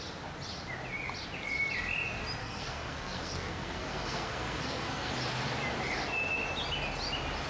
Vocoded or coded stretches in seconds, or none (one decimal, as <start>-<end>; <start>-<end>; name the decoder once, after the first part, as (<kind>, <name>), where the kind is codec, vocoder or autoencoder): 2.4-5.1 (codec, SNAC)